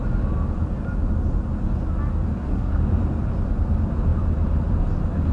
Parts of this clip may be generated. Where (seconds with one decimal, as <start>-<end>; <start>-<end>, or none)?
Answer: 2.3-2.8